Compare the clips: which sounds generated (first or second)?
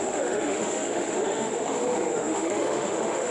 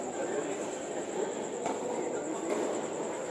first